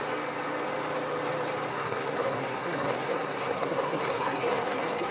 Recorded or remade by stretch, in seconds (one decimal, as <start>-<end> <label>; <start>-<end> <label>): 0.0-1.7 recorded; 1.7-5.1 remade